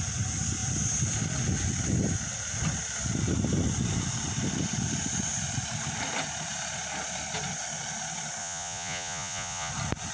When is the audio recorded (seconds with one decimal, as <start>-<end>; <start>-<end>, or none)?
0.0-8.4; 9.7-10.1